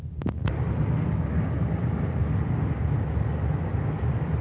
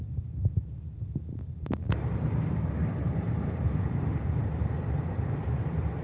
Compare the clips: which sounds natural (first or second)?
first